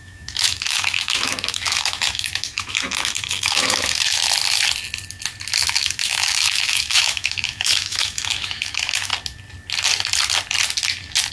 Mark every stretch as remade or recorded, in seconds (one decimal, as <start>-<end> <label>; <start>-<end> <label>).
0.0-4.2 remade; 4.2-5.7 recorded; 5.7-9.1 remade; 9.1-11.3 recorded